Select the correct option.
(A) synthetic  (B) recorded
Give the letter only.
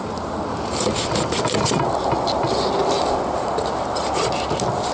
B